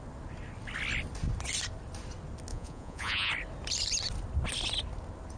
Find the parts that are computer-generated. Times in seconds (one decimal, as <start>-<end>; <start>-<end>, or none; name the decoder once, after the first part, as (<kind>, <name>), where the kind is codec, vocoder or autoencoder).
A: 2.5-3.3 (vocoder, Vocos)